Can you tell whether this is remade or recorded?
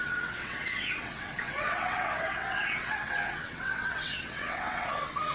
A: remade